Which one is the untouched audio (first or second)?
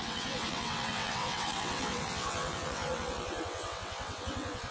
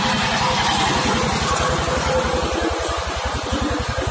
second